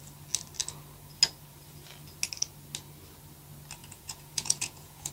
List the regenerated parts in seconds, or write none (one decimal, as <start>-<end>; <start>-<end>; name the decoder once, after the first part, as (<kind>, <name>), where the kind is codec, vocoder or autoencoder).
3.8-5.1 (vocoder, Vocos)